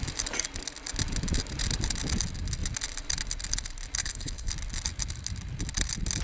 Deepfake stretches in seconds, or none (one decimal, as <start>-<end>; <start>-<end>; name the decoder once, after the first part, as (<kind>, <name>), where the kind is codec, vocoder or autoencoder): 4.0-4.5 (codec, HILCodec)